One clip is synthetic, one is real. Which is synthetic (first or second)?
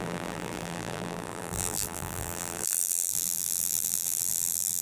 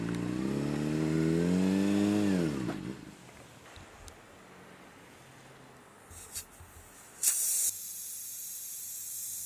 first